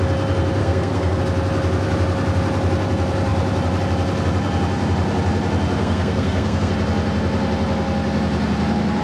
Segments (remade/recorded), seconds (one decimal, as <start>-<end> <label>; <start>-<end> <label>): 0.0-0.6 recorded; 0.6-1.2 remade; 1.2-5.8 recorded; 5.8-6.7 remade; 6.7-9.0 recorded